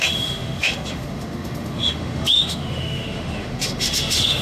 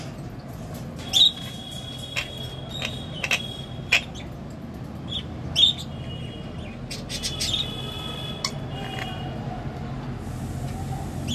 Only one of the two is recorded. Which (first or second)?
second